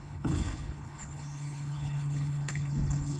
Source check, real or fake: fake